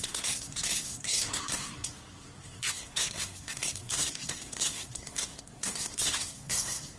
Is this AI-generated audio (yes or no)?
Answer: yes